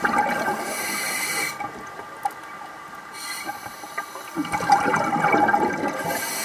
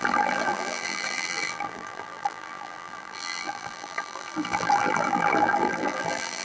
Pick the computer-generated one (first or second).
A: second